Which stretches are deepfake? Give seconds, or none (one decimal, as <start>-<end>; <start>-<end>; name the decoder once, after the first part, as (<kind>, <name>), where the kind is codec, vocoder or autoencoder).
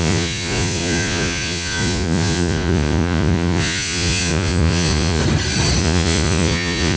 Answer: 0.0-5.2 (vocoder, Vocos); 5.8-7.0